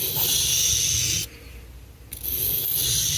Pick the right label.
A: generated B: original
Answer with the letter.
B